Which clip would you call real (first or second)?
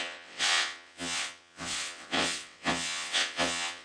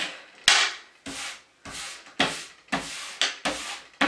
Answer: second